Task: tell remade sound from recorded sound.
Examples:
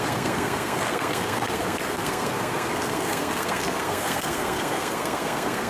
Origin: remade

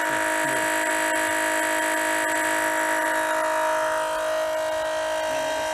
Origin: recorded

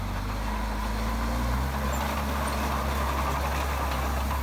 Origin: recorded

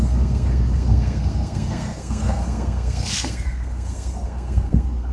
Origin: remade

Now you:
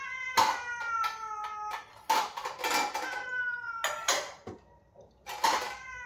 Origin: recorded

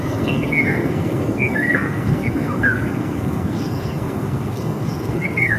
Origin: remade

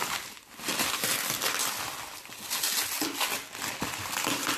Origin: recorded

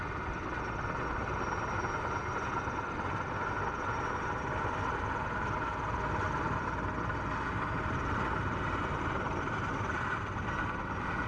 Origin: recorded